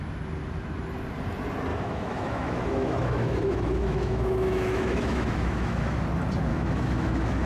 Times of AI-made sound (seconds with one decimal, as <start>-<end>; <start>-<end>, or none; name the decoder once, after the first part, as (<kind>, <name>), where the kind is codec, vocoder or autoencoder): 1.7-6.0 (autoencoder, DAC-VAE); 6.5-7.5

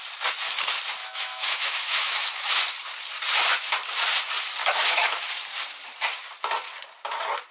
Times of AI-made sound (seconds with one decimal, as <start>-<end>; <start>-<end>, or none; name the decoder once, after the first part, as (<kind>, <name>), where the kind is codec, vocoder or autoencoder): 1.0-2.5 (autoencoder, DAC-VAE); 4.6-5.3

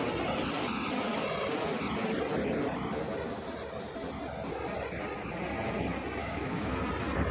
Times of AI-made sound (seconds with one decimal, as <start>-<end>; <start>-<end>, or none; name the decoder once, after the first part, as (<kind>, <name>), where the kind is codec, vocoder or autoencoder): 6.2-6.7 (autoencoder, DAC-VAE)

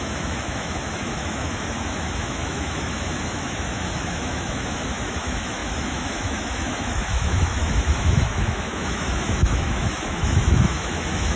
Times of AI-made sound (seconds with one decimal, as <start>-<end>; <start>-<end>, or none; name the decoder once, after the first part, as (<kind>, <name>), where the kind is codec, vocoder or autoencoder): 0.0-11.4 (autoencoder, DAC-VAE)

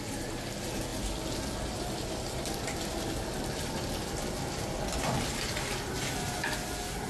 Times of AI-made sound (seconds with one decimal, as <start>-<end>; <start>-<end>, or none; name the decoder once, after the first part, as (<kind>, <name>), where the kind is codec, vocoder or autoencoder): none

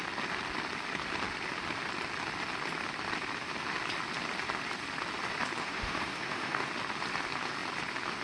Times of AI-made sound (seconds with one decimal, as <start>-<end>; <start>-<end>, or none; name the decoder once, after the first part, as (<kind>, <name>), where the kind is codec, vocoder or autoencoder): 5.6-6.7 (autoencoder, DAC-VAE)